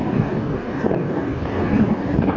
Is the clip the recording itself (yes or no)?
no